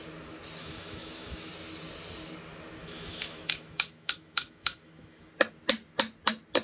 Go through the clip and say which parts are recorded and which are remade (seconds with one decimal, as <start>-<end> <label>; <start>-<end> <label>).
0.0-0.6 recorded; 0.6-1.5 remade; 1.5-2.8 recorded; 2.8-5.3 remade; 5.3-6.6 recorded